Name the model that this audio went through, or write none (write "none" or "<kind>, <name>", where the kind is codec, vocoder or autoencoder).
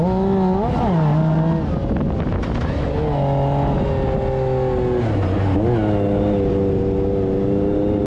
none